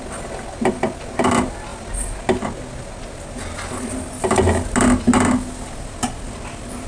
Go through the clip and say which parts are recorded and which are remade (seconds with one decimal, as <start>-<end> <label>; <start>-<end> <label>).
0.0-6.9 recorded